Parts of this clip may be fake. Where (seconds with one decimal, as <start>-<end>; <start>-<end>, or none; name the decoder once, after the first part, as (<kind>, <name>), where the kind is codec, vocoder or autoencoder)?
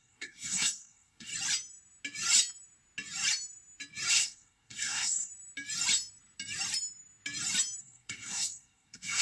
0.0-1.3 (codec, SNAC); 4.1-5.3; 7.8-9.2